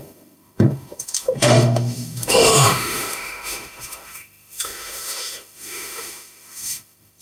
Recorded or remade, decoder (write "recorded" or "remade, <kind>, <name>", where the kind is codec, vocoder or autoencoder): remade, autoencoder, DAC-VAE